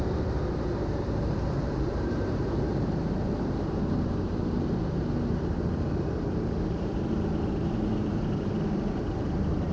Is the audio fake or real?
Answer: fake